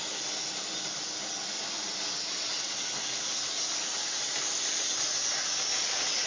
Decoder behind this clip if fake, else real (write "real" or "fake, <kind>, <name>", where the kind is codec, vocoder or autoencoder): real